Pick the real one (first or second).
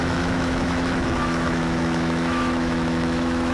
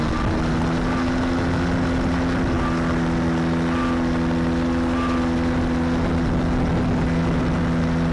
second